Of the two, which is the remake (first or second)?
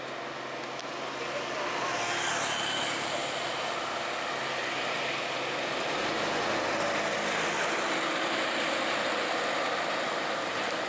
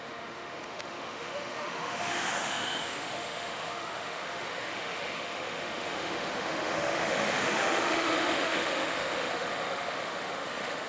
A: second